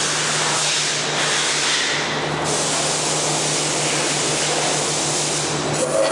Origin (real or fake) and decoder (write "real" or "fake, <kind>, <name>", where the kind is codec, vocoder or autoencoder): real